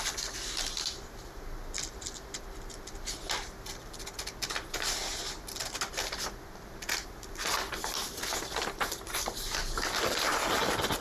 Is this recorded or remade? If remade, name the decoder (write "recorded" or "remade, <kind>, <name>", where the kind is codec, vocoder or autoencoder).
recorded